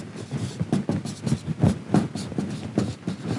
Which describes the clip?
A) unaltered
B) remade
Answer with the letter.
A